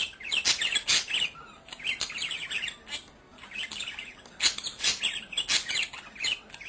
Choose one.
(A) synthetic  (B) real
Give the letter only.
B